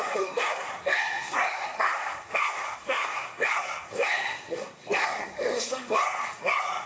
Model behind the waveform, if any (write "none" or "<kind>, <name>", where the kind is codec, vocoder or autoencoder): codec, SNAC